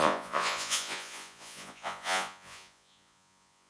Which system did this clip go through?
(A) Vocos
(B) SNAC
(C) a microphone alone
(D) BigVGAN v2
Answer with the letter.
A